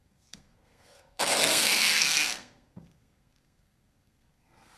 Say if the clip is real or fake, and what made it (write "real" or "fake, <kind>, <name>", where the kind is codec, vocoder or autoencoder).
fake, codec, SNAC